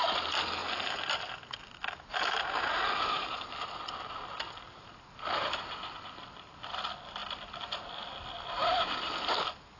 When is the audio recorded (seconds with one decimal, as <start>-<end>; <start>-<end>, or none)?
0.0-9.8

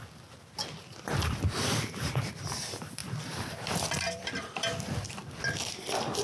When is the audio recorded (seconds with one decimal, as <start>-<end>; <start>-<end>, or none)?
0.0-0.8